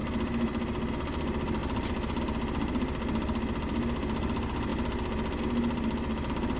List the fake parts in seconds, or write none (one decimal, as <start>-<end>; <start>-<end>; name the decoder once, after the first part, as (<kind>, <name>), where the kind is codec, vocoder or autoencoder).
none